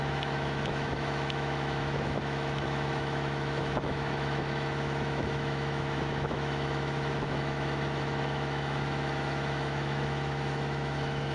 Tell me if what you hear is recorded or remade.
remade